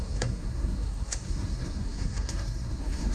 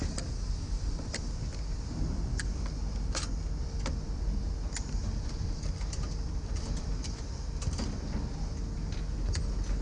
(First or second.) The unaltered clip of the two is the second